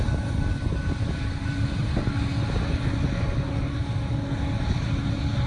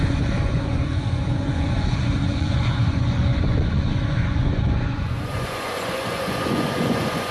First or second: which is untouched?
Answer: first